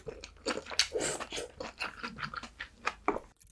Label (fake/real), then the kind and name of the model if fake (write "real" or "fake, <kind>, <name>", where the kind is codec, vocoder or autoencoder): real